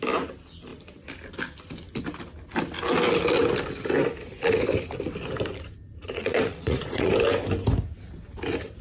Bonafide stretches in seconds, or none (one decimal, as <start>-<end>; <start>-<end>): 0.0-5.9; 7.1-8.8